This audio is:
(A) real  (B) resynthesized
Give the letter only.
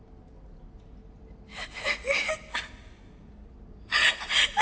A